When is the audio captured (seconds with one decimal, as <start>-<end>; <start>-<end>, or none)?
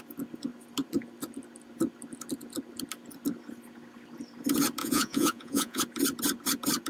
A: 0.0-4.8; 5.8-6.9